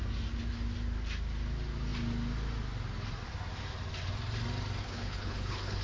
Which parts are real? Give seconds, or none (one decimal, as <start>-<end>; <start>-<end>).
0.0-4.8